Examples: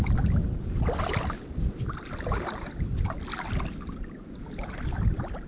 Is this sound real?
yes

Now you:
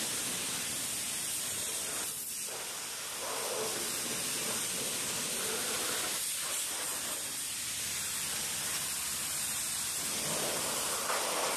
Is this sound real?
yes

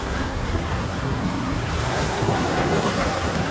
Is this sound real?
no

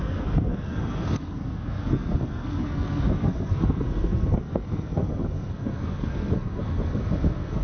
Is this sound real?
no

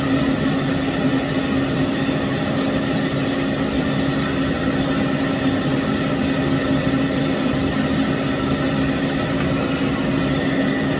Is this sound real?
yes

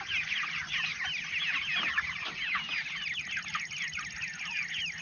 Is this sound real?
yes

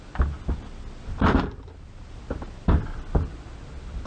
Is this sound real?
yes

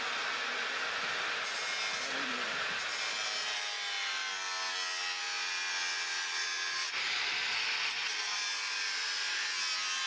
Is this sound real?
yes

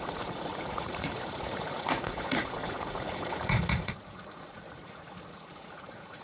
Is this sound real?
no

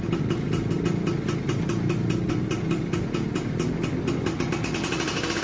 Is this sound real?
yes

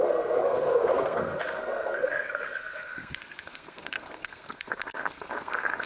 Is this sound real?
no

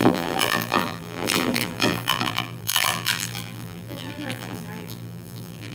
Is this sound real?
no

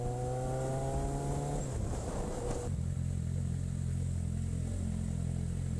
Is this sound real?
yes